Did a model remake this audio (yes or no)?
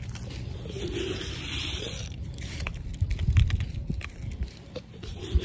yes